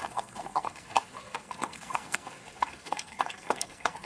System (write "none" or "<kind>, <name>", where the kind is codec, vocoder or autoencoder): codec, SNAC